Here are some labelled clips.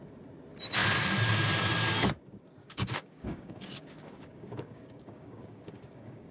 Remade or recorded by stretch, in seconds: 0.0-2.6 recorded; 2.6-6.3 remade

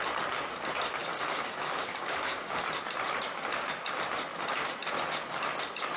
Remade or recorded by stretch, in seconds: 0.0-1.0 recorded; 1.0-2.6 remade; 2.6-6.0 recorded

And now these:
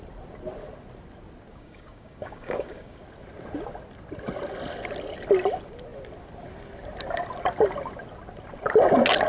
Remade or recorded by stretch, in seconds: 0.0-1.5 recorded; 1.5-3.0 remade; 3.0-9.3 recorded

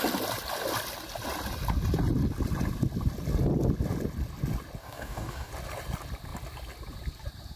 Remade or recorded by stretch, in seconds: 0.0-4.8 recorded; 4.8-5.5 remade; 5.5-7.6 recorded

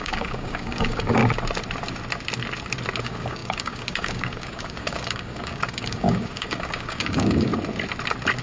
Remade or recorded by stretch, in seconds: 0.0-1.2 remade; 1.2-3.0 recorded; 3.0-7.5 remade; 7.5-8.4 recorded

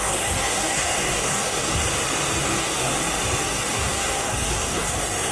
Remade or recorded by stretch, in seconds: 0.0-1.8 remade; 1.8-2.4 recorded; 2.4-2.9 remade; 2.9-3.4 recorded; 3.4-5.3 remade

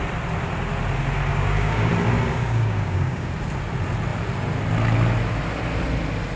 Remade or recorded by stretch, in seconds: 0.0-1.3 recorded; 1.3-1.9 remade; 1.9-2.3 recorded; 2.3-3.3 remade; 3.3-6.4 recorded